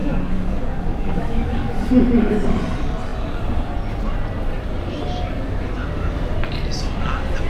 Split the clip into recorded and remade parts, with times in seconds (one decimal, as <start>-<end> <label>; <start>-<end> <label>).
0.0-1.7 remade; 1.7-7.5 recorded